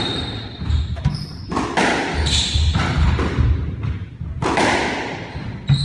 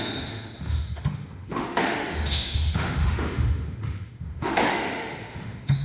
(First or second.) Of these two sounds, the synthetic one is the second